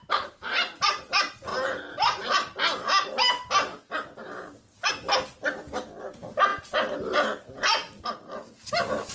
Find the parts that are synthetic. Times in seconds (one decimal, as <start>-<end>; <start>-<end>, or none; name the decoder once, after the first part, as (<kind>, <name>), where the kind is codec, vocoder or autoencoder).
none